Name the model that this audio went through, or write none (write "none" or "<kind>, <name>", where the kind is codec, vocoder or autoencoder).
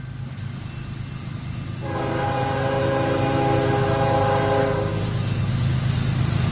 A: none